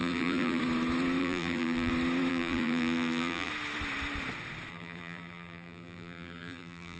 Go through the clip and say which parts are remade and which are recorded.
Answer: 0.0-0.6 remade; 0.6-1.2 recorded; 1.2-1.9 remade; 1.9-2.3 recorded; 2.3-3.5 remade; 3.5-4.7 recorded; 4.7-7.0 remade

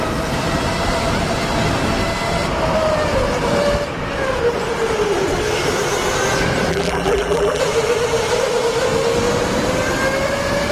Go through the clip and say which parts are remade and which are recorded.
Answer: 0.0-6.7 recorded; 6.7-7.6 remade; 7.6-10.7 recorded

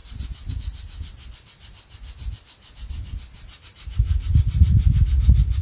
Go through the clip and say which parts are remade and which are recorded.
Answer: 0.0-5.6 recorded